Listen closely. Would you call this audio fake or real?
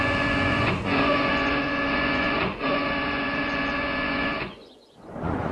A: fake